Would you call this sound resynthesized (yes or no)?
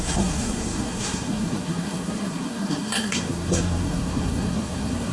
yes